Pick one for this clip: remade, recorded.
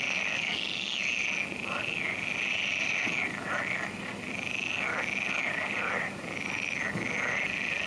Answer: recorded